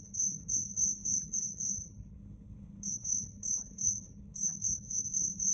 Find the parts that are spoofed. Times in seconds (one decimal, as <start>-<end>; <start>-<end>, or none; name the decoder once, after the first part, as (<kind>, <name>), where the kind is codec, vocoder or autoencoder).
0.0-5.5 (codec, HILCodec)